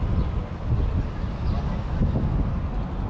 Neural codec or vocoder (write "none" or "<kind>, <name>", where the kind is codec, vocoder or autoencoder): none